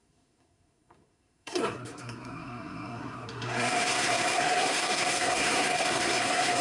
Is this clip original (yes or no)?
no